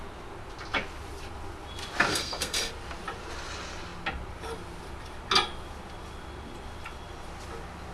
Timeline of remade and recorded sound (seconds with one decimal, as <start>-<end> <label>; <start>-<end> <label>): 0.0-2.1 recorded; 2.1-2.7 remade; 2.7-7.9 recorded